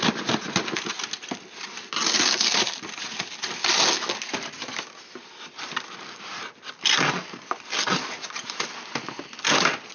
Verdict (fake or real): real